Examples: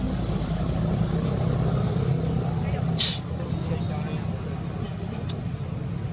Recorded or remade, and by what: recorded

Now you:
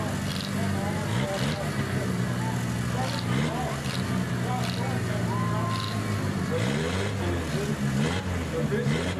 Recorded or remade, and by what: recorded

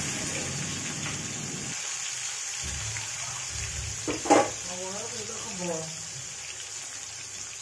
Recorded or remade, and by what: recorded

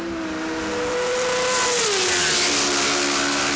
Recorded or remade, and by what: recorded